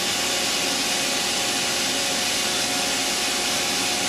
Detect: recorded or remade recorded